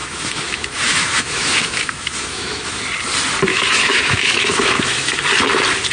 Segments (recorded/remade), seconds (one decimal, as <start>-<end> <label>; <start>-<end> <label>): 0.0-2.8 remade; 2.8-3.5 recorded; 3.5-5.2 remade; 5.2-5.9 recorded